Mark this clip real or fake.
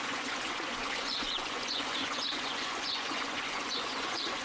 fake